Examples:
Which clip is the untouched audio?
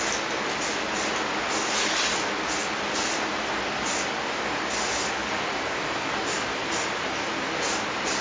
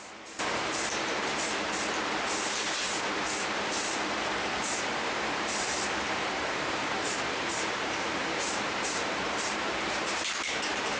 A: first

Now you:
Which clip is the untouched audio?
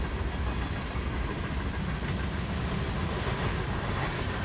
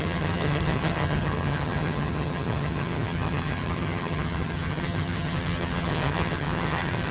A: first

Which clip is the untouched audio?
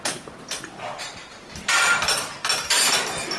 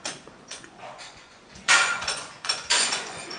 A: first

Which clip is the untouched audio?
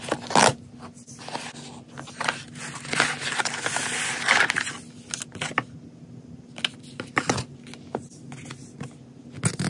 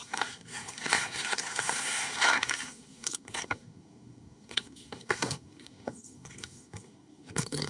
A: first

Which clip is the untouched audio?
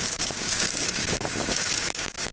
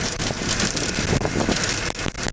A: second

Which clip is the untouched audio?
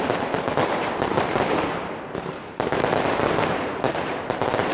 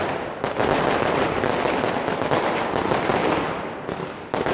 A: second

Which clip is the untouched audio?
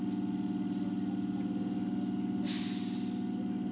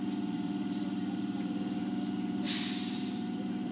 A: first